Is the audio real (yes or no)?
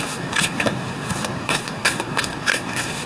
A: no